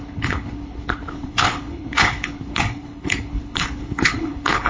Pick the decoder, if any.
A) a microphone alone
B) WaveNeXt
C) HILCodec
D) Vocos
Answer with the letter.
C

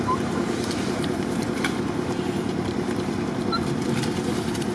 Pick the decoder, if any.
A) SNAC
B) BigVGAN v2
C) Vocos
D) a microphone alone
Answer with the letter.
B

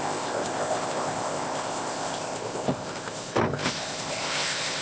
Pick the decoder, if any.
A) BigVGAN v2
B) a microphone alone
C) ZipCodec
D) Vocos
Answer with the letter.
C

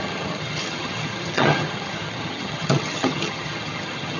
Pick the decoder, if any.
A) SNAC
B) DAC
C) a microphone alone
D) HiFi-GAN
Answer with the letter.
D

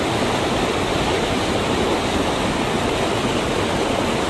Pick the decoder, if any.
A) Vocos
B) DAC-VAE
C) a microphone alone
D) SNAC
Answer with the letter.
C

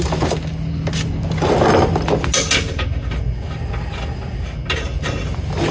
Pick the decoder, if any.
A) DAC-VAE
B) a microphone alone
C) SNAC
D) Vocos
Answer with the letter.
B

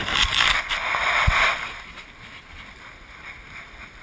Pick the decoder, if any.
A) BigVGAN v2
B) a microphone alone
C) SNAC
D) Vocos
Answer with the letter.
B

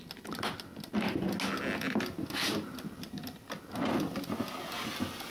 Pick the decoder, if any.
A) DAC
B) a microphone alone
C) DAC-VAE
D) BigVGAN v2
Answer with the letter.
B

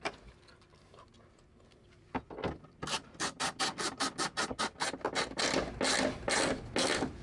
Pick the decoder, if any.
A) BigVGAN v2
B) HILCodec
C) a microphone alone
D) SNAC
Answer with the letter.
C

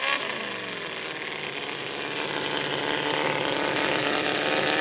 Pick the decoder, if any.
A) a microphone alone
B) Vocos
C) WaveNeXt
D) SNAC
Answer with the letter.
A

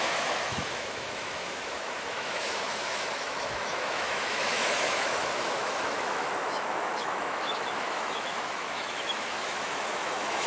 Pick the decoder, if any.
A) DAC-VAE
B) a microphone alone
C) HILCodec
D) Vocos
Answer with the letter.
A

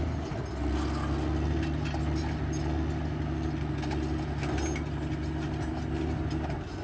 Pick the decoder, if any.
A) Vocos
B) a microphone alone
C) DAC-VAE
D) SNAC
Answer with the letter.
B